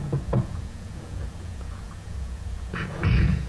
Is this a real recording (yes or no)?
no